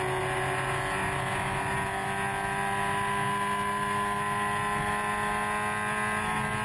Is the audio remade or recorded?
recorded